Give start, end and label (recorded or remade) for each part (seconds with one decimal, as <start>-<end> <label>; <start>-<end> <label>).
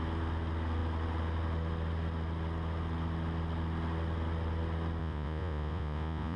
0.0-5.0 recorded; 5.0-6.4 remade